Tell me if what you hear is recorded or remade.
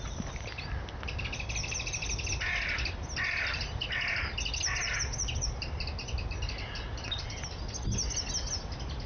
recorded